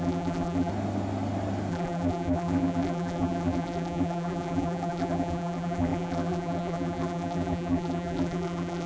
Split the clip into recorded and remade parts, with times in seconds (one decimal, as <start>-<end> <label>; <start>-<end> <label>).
0.0-0.7 remade; 0.7-1.7 recorded; 1.7-8.9 remade